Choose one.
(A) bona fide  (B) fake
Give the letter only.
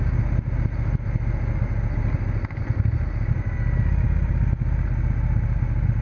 A